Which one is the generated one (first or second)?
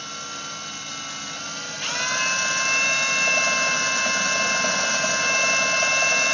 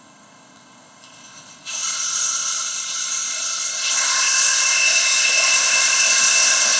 second